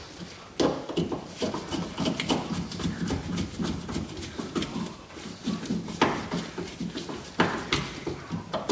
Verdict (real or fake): real